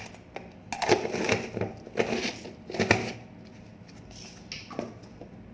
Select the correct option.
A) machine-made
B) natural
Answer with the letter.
B